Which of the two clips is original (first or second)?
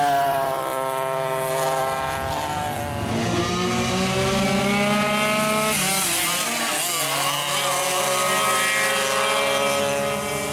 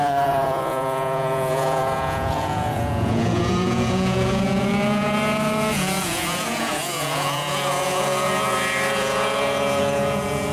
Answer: first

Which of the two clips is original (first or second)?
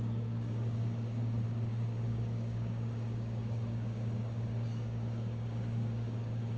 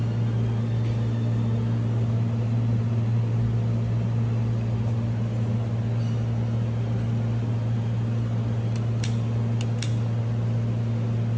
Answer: second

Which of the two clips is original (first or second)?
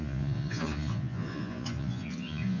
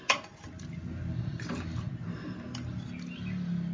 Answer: second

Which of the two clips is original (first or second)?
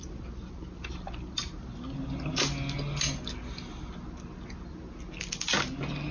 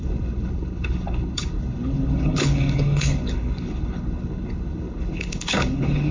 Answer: first